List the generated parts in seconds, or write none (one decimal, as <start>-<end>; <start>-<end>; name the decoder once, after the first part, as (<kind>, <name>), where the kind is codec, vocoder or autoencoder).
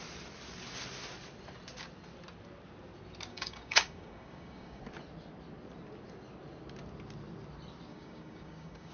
3.3-4.8 (codec, DAC); 7.9-8.9